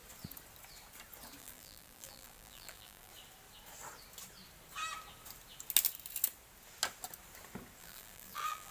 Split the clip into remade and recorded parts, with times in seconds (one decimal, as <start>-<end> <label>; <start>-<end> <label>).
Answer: 0.0-1.4 recorded; 1.4-3.1 remade; 3.1-7.8 recorded; 7.8-8.7 remade